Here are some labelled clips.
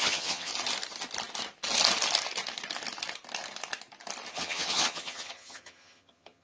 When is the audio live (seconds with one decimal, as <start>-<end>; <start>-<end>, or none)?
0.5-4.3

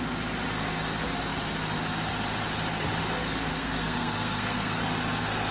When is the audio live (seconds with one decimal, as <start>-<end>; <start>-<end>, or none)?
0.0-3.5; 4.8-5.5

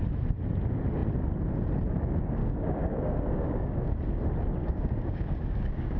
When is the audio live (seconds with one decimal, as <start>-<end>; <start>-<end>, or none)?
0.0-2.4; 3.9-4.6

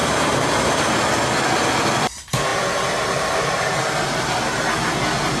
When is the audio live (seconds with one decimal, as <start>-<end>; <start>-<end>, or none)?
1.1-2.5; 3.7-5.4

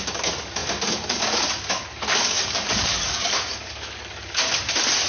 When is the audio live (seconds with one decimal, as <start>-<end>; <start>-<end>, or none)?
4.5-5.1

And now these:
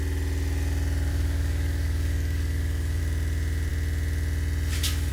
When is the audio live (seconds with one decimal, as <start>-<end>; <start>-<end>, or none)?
0.0-1.1; 3.0-5.1